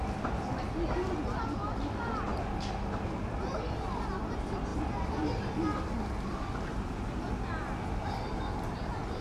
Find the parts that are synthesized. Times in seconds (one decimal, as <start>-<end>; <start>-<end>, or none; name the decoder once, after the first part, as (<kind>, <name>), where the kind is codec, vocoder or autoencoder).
none